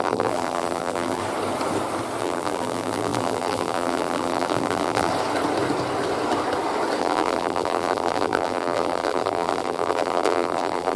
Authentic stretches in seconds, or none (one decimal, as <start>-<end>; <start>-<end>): 1.2-2.2; 5.1-7.0